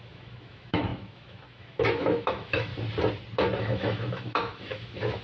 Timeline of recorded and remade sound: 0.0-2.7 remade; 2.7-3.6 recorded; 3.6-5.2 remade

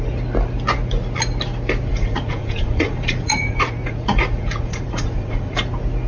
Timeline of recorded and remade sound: 0.0-1.9 recorded; 1.9-5.6 remade; 5.6-6.1 recorded

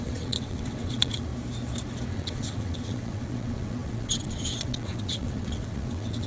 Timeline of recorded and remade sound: 0.0-1.3 remade; 1.3-2.1 recorded; 2.1-6.3 remade

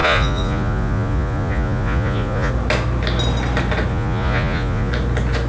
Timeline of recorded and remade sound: 0.0-2.5 remade; 2.5-3.9 recorded; 3.9-4.9 remade; 4.9-5.5 recorded

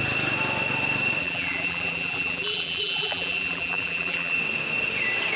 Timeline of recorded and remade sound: 0.0-1.2 recorded; 1.2-4.4 remade; 4.4-5.4 recorded

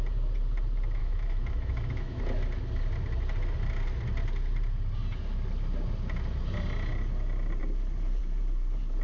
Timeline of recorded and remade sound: 0.0-1.0 recorded; 1.0-2.2 remade; 2.2-9.0 recorded

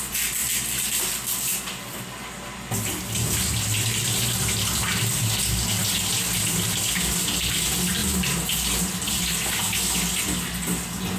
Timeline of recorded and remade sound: 0.0-11.2 recorded

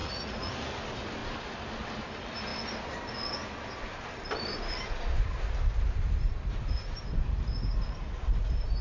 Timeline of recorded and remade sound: 0.0-0.5 remade; 0.5-8.8 recorded